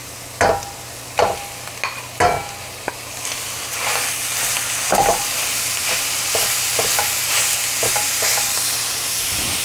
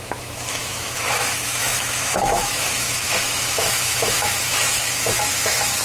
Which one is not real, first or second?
second